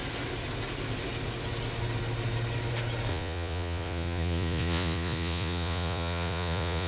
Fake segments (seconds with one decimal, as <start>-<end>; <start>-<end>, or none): 3.1-6.9